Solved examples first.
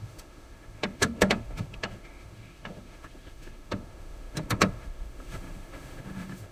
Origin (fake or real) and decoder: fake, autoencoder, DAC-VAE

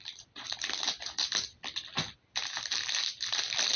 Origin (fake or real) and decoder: real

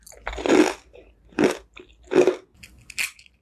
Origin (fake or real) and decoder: real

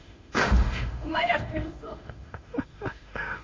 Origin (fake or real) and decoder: fake, autoencoder, DAC-VAE